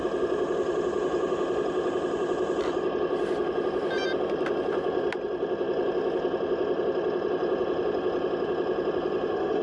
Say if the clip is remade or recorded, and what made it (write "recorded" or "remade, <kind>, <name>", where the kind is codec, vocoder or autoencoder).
recorded